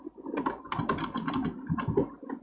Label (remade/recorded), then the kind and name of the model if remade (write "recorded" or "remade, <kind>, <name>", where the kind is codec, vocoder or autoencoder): remade, vocoder, BigVGAN v2